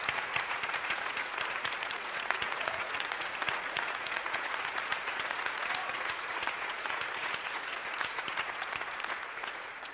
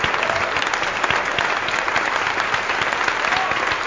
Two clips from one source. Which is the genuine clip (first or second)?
second